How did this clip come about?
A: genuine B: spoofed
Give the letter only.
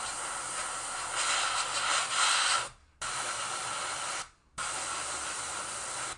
A